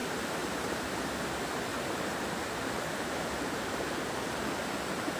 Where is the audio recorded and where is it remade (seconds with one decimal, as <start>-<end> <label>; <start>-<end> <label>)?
0.0-1.0 remade; 1.0-1.7 recorded; 1.7-4.0 remade; 4.0-5.2 recorded